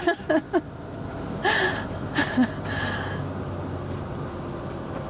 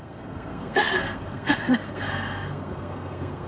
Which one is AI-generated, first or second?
second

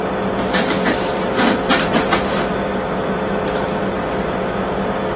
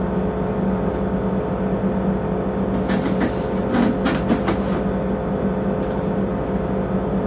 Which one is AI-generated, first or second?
first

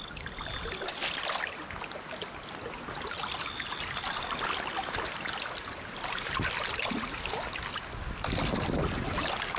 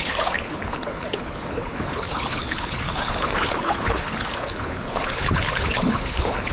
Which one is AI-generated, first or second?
second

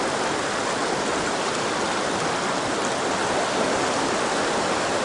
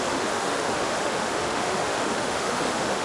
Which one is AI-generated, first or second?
second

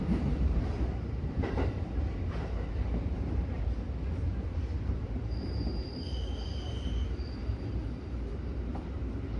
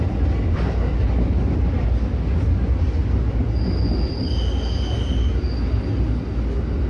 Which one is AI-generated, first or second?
first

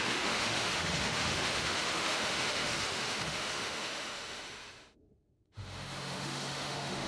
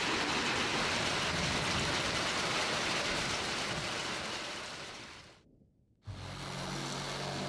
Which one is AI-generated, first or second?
first